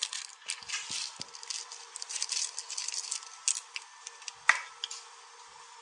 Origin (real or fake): real